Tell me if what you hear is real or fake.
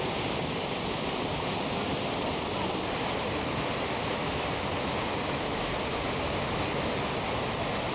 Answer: real